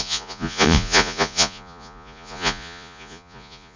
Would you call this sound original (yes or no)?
no